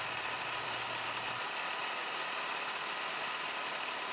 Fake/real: real